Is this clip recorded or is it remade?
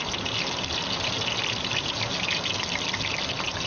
recorded